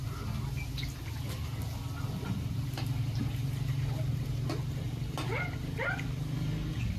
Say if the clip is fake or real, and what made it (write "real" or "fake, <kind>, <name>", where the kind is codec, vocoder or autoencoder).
real